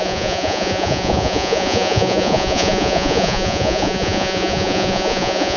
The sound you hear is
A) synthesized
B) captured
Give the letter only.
A